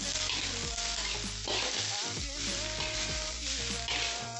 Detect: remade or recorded recorded